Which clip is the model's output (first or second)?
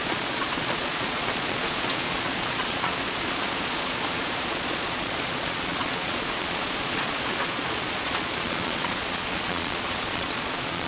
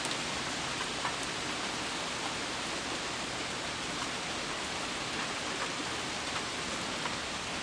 first